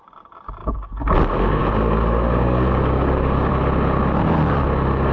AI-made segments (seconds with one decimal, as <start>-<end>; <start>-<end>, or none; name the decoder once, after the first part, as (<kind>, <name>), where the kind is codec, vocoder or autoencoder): 0.6-1.1 (codec, DAC); 1.6-3.5